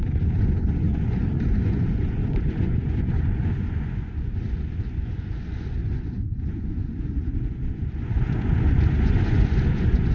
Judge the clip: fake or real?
fake